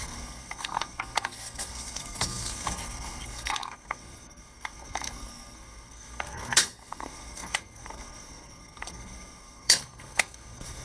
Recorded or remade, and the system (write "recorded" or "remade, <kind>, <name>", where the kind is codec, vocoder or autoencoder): remade, codec, SNAC